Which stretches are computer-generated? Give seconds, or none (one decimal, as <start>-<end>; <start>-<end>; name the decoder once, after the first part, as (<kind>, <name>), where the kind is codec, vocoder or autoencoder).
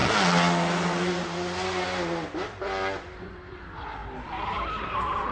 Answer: none